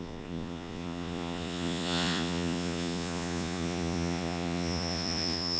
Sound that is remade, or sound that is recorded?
remade